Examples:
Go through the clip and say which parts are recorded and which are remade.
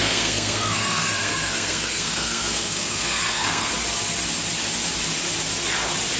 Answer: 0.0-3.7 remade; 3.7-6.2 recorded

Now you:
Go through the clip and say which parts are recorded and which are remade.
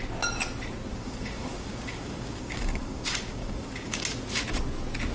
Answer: 0.0-0.9 recorded; 0.9-4.0 remade; 4.0-5.1 recorded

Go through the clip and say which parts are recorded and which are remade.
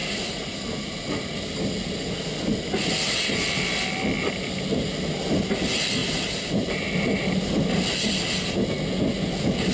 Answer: 0.0-1.3 remade; 1.3-6.0 recorded; 6.0-7.5 remade; 7.5-9.7 recorded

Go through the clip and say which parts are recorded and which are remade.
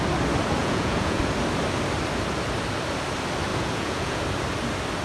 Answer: 0.0-0.6 recorded; 0.6-1.2 remade; 1.2-3.5 recorded; 3.5-4.2 remade; 4.2-5.0 recorded